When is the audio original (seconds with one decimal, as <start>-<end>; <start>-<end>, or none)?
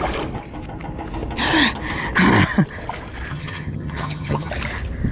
0.0-3.3; 4.5-5.1